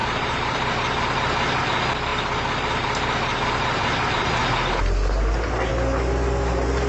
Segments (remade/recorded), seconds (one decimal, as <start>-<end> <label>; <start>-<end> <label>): 0.0-0.7 remade; 0.7-6.9 recorded